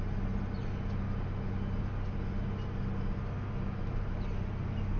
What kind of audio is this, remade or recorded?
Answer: recorded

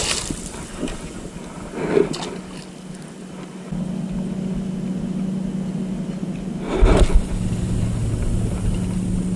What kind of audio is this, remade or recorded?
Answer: recorded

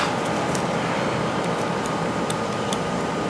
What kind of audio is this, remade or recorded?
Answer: recorded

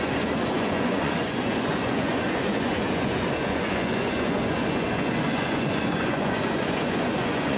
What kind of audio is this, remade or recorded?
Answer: remade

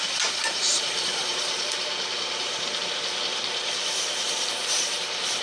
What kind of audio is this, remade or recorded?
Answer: remade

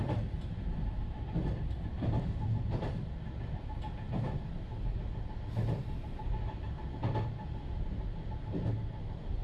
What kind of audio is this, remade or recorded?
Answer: recorded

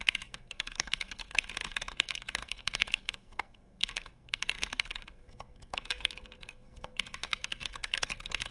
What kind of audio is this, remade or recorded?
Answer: remade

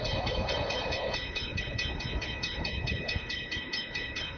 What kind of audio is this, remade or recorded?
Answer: remade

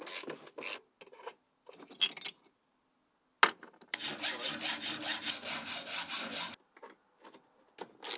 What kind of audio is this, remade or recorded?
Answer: recorded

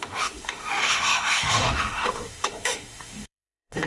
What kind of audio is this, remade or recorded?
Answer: remade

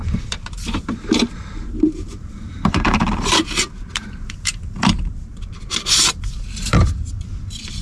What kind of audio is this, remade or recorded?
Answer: remade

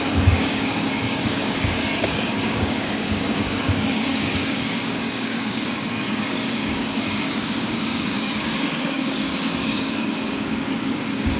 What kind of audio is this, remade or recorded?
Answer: remade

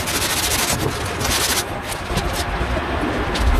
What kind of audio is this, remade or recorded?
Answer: recorded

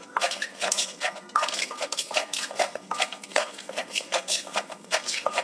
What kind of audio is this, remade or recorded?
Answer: remade